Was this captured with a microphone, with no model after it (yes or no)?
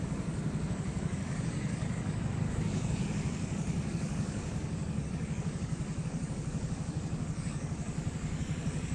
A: no